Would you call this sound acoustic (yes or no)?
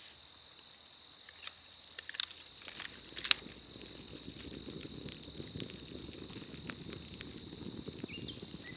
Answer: yes